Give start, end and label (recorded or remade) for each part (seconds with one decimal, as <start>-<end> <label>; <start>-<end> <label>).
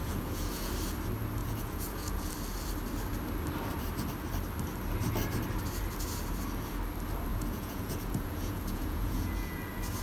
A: 0.0-0.7 remade; 0.7-1.4 recorded; 1.4-2.3 remade; 2.3-7.3 recorded; 7.3-9.6 remade; 9.6-10.0 recorded